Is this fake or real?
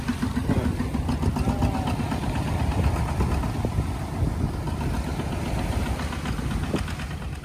real